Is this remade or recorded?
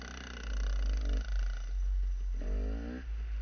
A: recorded